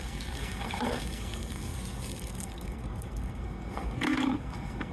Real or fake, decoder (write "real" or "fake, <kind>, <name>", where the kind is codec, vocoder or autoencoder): fake, codec, SNAC